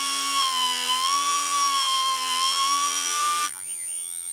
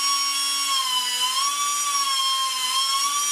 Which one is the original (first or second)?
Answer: second